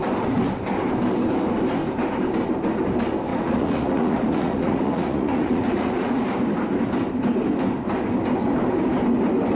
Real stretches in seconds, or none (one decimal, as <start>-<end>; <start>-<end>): 0.0-3.3; 6.1-9.5